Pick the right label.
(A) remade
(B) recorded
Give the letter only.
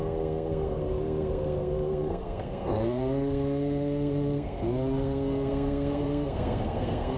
A